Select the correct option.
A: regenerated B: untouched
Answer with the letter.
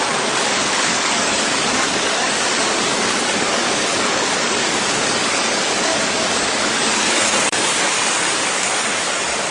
A